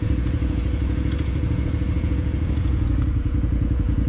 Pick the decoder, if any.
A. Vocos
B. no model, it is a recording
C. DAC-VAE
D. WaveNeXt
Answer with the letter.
A